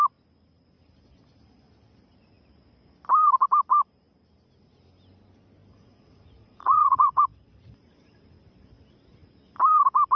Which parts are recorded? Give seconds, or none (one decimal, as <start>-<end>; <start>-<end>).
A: 0.0-5.7; 7.2-10.2